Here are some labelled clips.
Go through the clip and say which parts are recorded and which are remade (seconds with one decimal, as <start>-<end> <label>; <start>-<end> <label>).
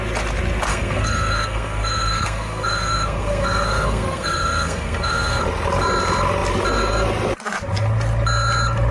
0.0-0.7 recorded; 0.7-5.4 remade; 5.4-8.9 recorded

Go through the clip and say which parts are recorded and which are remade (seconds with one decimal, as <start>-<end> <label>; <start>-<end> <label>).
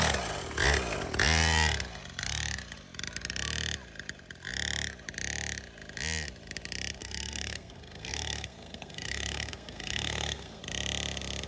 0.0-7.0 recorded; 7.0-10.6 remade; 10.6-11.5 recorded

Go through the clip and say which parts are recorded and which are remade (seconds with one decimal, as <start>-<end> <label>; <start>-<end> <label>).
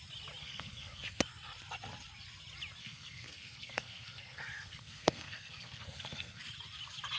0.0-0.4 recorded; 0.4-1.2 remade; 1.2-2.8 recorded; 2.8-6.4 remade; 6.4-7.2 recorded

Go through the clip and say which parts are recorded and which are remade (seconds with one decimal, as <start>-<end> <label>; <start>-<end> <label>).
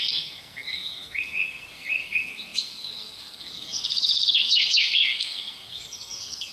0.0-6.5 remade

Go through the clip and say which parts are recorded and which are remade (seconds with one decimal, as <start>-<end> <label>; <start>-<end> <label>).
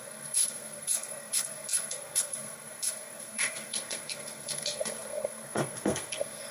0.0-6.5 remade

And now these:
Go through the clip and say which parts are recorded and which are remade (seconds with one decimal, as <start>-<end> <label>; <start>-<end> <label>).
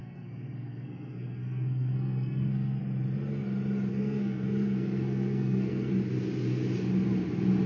0.0-2.8 remade; 2.8-3.9 recorded; 3.9-5.9 remade; 5.9-7.7 recorded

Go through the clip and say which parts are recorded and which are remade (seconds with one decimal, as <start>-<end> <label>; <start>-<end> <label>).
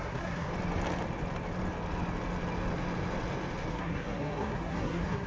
0.0-0.5 remade; 0.5-3.7 recorded; 3.7-5.3 remade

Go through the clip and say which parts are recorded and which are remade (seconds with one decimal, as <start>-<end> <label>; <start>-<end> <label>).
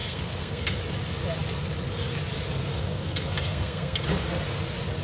0.0-0.8 remade; 0.8-2.7 recorded; 2.7-4.0 remade; 4.0-5.0 recorded